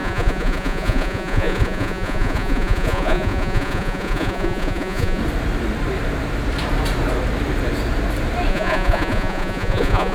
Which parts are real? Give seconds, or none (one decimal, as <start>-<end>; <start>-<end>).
5.2-8.5